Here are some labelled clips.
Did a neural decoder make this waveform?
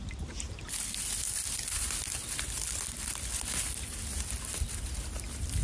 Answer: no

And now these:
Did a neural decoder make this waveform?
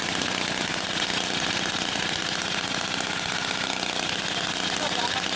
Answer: yes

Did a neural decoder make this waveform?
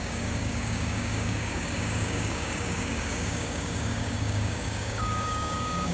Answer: yes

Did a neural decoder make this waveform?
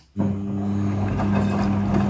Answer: no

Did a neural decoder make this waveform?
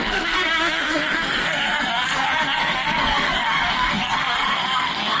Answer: yes